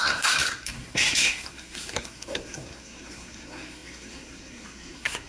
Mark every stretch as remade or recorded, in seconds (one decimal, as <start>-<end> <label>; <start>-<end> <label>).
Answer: 0.0-5.3 remade